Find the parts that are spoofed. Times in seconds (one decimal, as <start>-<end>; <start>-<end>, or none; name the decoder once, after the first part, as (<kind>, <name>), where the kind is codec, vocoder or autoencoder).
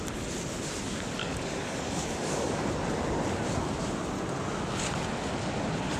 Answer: 1.2-2.7 (codec, DAC)